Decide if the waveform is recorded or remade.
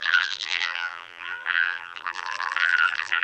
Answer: remade